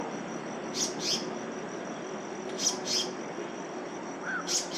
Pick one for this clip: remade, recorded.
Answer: recorded